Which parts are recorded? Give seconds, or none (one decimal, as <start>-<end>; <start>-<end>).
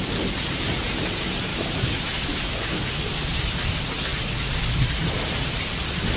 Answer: 0.0-1.5; 2.8-6.2